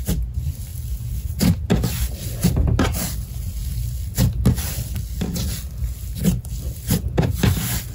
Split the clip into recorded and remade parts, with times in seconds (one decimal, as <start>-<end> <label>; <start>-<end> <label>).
0.0-7.9 recorded